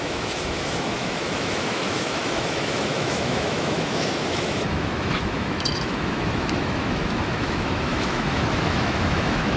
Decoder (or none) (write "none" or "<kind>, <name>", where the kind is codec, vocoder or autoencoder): autoencoder, DAC-VAE